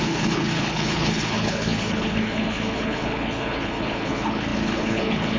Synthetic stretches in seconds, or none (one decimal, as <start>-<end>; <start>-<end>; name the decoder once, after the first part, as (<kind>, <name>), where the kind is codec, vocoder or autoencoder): 0.0-5.4 (codec, HILCodec)